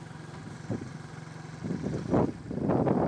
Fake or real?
real